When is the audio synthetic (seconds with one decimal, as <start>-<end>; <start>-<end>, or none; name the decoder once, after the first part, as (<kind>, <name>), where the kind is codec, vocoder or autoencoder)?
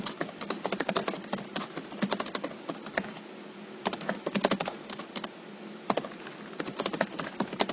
none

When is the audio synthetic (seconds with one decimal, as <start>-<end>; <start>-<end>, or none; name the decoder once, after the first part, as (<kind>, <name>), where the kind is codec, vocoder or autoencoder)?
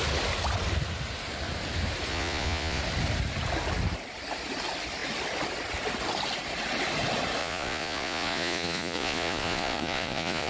2.1-2.8 (vocoder, Vocos); 7.4-10.5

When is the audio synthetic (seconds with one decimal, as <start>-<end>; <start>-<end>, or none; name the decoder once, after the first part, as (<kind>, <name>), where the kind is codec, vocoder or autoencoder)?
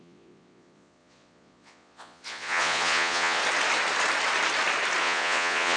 0.0-3.4 (vocoder, Vocos); 5.0-5.8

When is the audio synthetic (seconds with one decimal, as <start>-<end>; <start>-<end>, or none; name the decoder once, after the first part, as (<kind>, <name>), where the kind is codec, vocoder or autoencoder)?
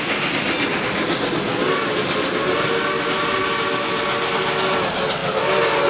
none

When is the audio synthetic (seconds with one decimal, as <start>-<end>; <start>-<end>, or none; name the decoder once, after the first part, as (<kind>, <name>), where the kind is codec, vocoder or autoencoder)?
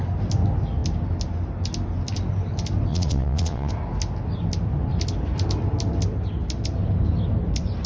2.9-3.7 (vocoder, Vocos)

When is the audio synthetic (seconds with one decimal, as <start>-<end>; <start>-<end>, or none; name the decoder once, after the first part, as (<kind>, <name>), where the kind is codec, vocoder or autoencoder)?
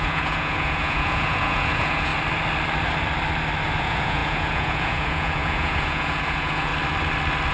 0.0-2.1 (vocoder, Vocos); 3.8-6.7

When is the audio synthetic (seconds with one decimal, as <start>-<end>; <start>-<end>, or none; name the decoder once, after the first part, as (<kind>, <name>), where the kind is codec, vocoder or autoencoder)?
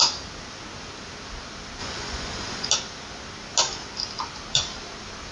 1.8-2.7 (vocoder, Vocos)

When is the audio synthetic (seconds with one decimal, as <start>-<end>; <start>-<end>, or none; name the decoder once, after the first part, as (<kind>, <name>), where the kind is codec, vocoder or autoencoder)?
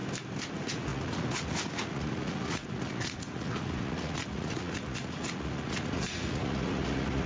0.5-7.3 (vocoder, Vocos)